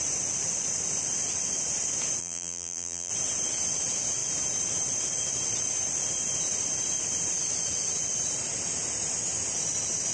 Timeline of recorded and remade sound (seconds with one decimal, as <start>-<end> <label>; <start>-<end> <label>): 0.0-2.2 recorded; 2.2-3.1 remade; 3.1-10.1 recorded